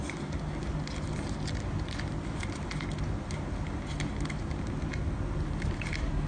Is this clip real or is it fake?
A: real